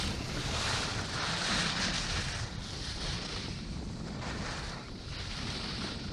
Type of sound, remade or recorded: recorded